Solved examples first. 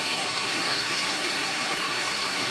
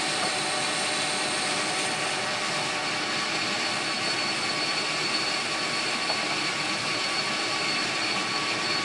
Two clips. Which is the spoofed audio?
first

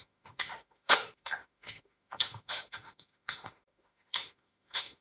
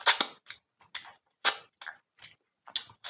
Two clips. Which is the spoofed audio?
first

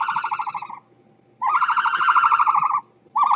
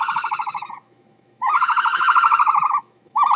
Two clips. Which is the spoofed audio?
second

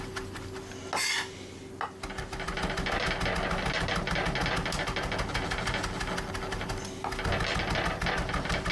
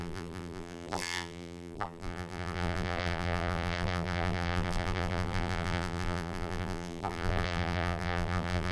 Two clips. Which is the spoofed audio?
second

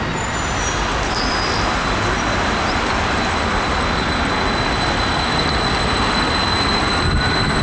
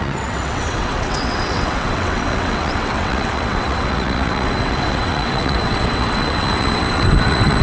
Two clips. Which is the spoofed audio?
second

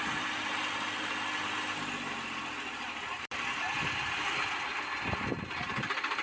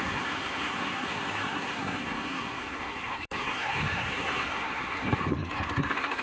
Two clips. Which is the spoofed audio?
second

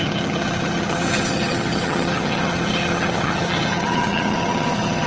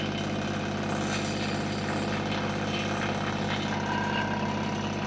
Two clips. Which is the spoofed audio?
first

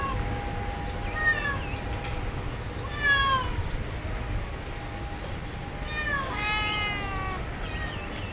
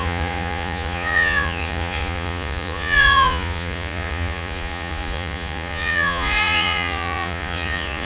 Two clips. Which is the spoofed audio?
second